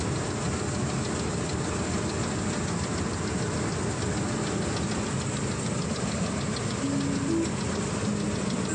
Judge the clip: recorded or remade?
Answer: recorded